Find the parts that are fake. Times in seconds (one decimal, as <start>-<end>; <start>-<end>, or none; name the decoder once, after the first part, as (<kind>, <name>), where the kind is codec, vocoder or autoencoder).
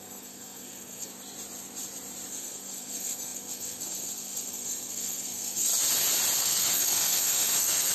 0.0-1.1 (codec, SNAC); 2.3-5.7; 6.4-7.9